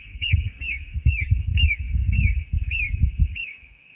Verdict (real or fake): fake